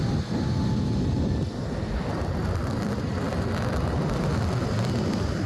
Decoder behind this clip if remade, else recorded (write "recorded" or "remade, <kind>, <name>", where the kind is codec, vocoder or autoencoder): recorded